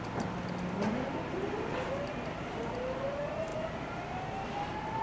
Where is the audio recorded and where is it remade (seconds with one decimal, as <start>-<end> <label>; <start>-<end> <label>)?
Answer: 0.0-5.0 recorded